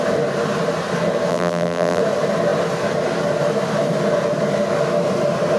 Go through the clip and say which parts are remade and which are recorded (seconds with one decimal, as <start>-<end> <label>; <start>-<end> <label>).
0.0-1.3 recorded; 1.3-2.0 remade; 2.0-5.6 recorded